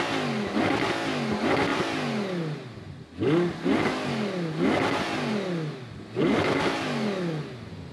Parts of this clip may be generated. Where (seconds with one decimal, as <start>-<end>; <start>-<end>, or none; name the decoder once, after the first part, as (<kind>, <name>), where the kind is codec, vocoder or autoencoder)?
none